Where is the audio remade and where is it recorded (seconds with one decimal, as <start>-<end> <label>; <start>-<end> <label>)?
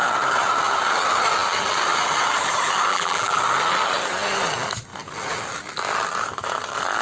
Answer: 0.0-2.9 recorded; 2.9-3.4 remade; 3.4-7.0 recorded